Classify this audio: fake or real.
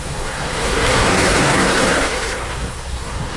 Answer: fake